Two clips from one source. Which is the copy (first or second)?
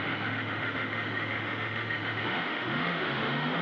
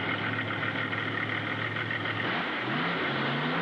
first